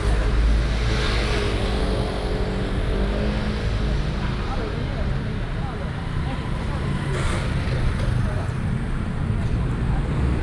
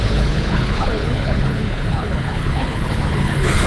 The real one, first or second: first